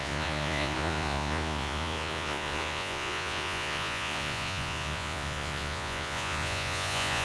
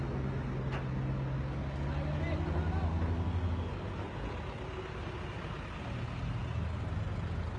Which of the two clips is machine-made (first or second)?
first